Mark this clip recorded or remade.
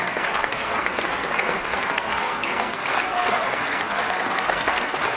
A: remade